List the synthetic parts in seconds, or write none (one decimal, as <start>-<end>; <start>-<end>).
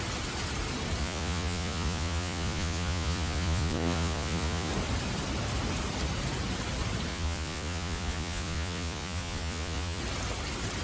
1.0-4.7; 7.1-10.0